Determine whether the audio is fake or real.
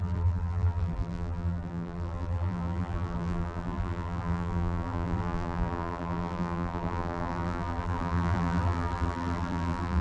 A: fake